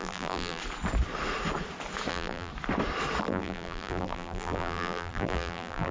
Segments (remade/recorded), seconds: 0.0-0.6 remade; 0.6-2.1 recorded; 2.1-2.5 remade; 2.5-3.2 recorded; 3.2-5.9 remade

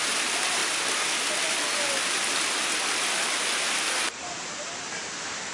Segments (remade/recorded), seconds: 0.0-0.6 remade; 0.6-3.9 recorded; 3.9-5.5 remade

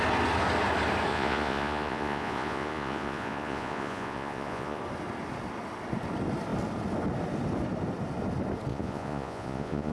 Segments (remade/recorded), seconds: 0.0-1.1 recorded; 1.1-4.8 remade; 4.8-8.7 recorded; 8.7-9.9 remade

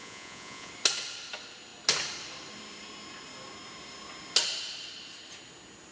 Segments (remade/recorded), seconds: 0.0-0.7 remade; 0.7-5.9 recorded

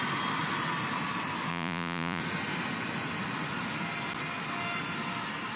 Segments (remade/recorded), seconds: 0.0-1.5 recorded; 1.5-2.2 remade; 2.2-5.6 recorded

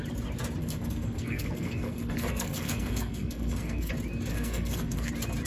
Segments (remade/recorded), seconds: 0.0-0.6 recorded; 0.6-3.9 remade; 3.9-4.3 recorded; 4.3-5.1 remade; 5.1-5.5 recorded

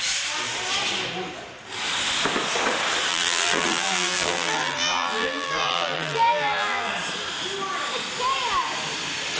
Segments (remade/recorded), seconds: 0.0-3.1 recorded; 3.1-6.9 remade; 6.9-9.4 recorded

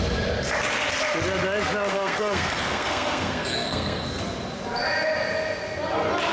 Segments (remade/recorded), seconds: 0.0-1.9 recorded; 1.9-4.2 remade; 4.2-6.3 recorded